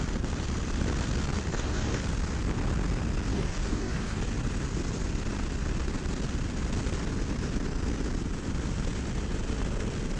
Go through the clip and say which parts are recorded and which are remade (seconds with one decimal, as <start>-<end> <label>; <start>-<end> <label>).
0.0-1.5 recorded; 1.5-2.0 remade; 2.0-3.3 recorded; 3.3-4.2 remade; 4.2-10.2 recorded